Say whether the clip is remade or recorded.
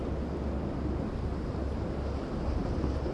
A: recorded